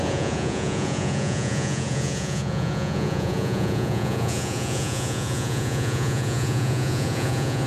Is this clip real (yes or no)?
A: no